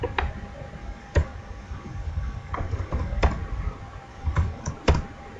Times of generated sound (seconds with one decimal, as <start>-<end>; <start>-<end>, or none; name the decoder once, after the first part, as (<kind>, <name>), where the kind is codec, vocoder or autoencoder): 0.8-3.2 (codec, DAC); 4.1-4.7